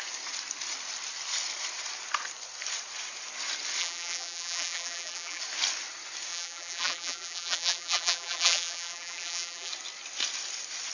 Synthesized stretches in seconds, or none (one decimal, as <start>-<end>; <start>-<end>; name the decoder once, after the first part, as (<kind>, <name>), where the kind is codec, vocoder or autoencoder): 3.8-5.4 (vocoder, BigVGAN v2); 6.3-9.7